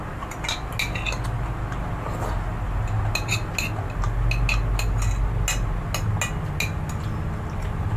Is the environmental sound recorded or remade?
recorded